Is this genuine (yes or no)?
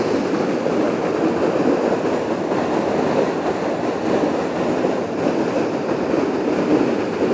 yes